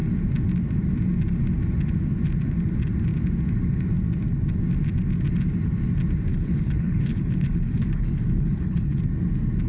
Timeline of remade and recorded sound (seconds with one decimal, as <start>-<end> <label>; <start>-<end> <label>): 0.0-6.3 recorded; 6.3-9.0 remade; 9.0-9.7 recorded